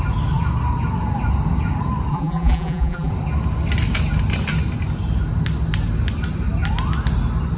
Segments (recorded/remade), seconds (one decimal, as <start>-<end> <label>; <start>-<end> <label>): 0.0-2.1 recorded; 2.1-3.1 remade; 3.1-7.6 recorded